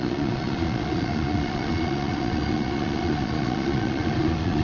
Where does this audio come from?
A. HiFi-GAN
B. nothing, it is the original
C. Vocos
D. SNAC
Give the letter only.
C